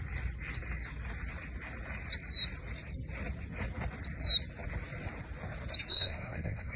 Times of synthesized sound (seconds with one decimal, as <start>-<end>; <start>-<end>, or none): 5.9-6.8